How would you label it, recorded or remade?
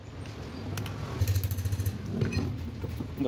recorded